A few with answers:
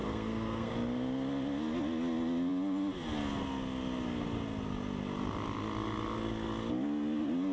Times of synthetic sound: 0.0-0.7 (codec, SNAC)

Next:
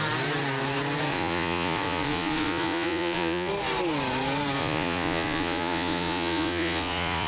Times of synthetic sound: 1.1-3.5 (vocoder, Vocos); 4.6-7.3